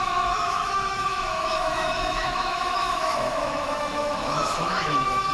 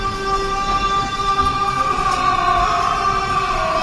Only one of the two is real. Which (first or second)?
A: second